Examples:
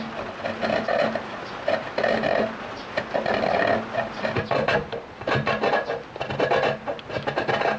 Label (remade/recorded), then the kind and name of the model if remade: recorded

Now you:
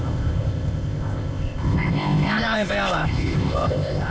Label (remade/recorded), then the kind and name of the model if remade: remade, codec, ZipCodec